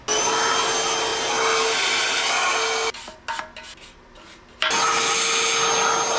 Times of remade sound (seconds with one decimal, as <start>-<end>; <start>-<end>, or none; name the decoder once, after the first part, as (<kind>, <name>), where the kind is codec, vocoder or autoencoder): none

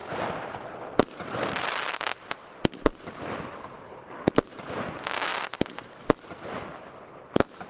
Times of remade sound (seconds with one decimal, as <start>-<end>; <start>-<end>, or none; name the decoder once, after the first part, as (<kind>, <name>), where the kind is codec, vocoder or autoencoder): 0.0-4.6 (vocoder, BigVGAN v2)

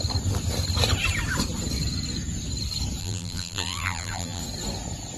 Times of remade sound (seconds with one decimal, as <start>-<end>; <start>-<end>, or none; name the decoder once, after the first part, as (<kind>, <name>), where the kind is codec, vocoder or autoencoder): 3.0-4.4 (vocoder, BigVGAN v2)

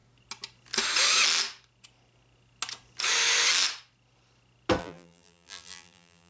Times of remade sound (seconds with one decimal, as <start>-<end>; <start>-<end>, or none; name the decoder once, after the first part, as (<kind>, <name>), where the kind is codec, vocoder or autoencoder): 4.8-6.3 (vocoder, BigVGAN v2)